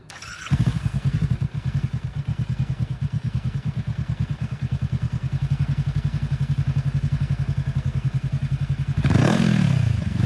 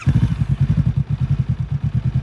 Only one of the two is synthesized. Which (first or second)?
first